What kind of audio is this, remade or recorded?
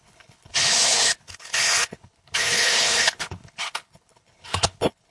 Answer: remade